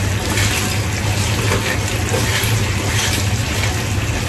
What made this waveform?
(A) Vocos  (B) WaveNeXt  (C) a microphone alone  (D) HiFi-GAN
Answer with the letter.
C